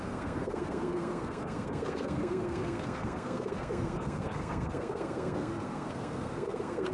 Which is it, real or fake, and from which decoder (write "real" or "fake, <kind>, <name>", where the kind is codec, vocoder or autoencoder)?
fake, codec, SNAC